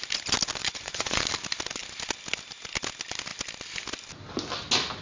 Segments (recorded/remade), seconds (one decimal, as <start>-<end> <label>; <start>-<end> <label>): 0.0-0.6 recorded; 0.6-1.2 remade; 1.2-5.0 recorded